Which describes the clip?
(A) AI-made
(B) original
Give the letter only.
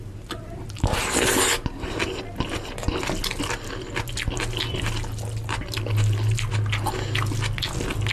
B